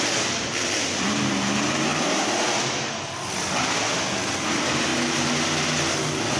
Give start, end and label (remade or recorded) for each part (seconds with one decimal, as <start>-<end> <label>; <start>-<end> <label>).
0.0-1.9 recorded; 1.9-3.9 remade; 3.9-6.4 recorded